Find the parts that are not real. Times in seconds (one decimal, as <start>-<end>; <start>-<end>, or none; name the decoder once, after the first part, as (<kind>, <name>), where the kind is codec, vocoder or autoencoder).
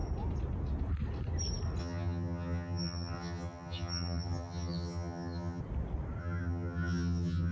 1.8-5.6 (vocoder, HiFi-GAN); 6.2-7.5